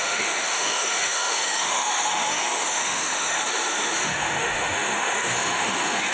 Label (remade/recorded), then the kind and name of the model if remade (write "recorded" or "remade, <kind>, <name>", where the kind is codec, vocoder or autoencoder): remade, autoencoder, DAC-VAE